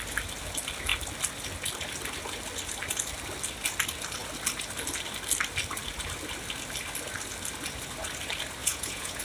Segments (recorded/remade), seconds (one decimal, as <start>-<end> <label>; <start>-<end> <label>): 0.0-8.6 recorded; 8.6-9.2 remade